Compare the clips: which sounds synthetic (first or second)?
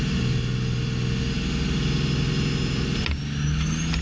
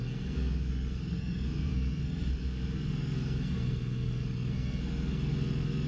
second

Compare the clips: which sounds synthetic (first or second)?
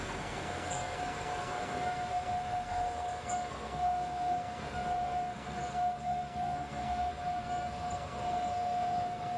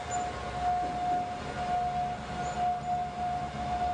first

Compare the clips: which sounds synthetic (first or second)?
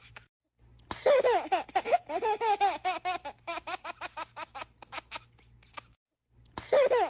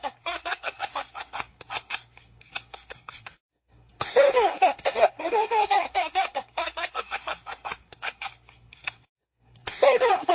second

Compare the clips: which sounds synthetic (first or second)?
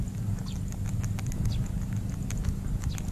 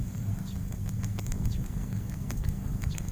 second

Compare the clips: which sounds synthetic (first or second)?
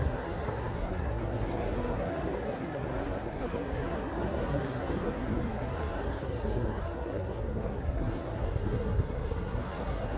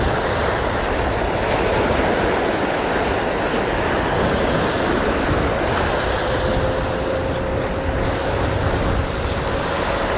first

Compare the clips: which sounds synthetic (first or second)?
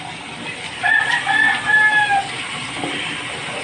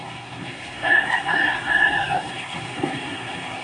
second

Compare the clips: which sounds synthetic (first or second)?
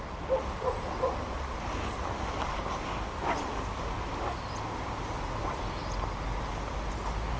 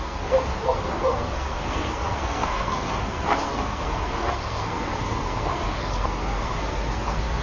second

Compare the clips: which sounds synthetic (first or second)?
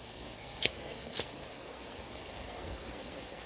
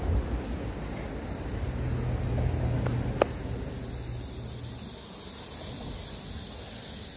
first